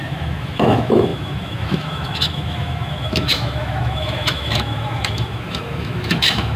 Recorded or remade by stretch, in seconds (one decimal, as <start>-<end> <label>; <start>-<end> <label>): 0.0-6.6 remade